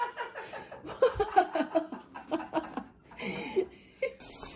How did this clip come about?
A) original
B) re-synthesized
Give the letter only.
A